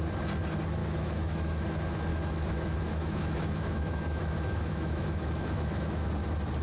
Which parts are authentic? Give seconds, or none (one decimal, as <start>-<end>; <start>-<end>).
0.0-0.8; 1.6-2.1; 6.1-6.6